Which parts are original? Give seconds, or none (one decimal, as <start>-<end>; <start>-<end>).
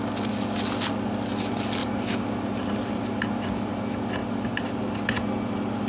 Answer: 0.0-1.8; 3.7-4.2; 4.8-5.9